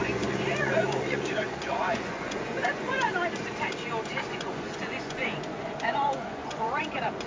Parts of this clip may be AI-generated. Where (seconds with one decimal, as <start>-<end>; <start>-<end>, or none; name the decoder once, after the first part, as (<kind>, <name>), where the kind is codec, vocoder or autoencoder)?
0.0-3.1 (vocoder, Vocos); 4.3-7.3